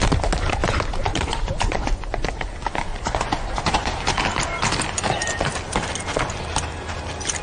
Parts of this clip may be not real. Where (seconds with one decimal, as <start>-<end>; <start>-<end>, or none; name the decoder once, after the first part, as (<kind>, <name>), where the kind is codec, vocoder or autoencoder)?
1.1-2.5 (vocoder, Vocos); 2.9-3.9